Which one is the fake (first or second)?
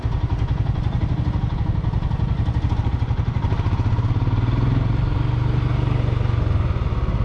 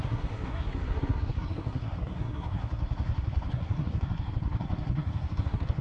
second